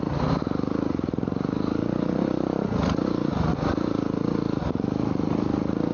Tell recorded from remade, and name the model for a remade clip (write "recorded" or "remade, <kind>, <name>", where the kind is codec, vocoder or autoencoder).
recorded